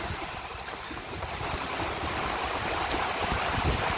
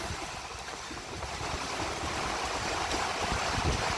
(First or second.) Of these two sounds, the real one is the second